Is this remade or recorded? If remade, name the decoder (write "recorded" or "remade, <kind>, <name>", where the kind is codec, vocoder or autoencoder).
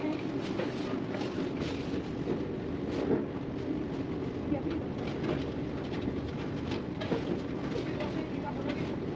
recorded